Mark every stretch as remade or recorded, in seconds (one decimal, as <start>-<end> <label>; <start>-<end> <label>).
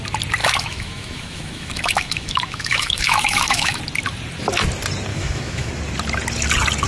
0.0-0.4 recorded; 0.4-3.8 remade; 3.8-5.1 recorded; 5.1-5.7 remade; 5.7-6.9 recorded